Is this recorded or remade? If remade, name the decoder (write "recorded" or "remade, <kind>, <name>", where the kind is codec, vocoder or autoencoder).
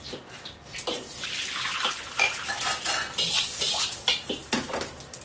recorded